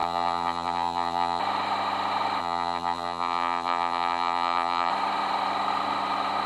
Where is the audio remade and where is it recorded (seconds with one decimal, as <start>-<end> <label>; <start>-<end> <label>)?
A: 0.0-1.4 remade; 1.4-2.4 recorded; 2.4-4.9 remade; 4.9-6.5 recorded